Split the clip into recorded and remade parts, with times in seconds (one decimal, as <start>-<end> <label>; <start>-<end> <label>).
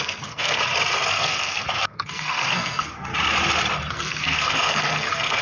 0.0-0.6 remade; 0.6-1.2 recorded; 1.2-3.1 remade; 3.1-3.9 recorded; 3.9-5.4 remade